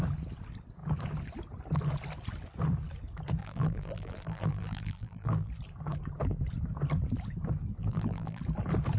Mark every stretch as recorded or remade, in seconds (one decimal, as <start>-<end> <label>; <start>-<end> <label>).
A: 0.0-3.4 recorded; 3.4-5.5 remade; 5.5-7.8 recorded; 7.8-8.4 remade; 8.4-9.0 recorded